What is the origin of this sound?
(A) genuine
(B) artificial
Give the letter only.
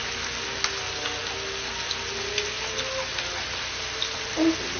A